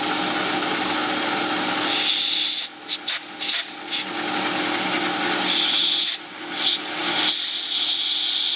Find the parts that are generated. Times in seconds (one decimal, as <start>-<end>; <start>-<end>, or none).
none